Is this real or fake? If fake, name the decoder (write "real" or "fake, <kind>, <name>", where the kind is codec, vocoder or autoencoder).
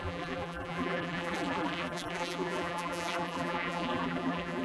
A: fake, vocoder, BigVGAN v2